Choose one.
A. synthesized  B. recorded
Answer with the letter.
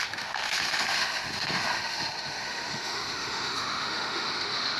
A